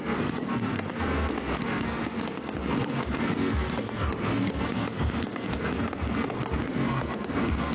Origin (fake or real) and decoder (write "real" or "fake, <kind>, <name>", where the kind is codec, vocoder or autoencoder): fake, codec, SNAC